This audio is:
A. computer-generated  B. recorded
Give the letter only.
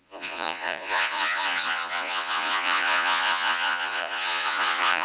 A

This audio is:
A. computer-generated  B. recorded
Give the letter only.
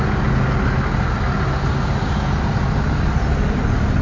B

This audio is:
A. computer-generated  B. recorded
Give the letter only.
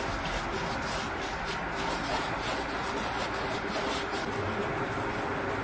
B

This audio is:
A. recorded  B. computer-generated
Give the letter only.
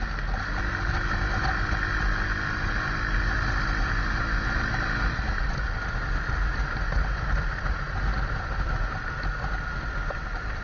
A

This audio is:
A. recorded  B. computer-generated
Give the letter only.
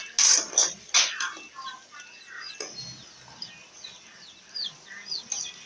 A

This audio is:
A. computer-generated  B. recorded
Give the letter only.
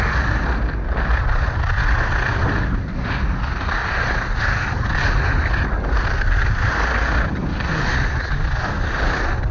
B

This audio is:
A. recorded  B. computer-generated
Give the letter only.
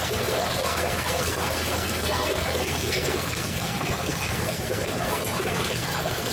B